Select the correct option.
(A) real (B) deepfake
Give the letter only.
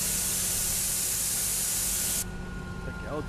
A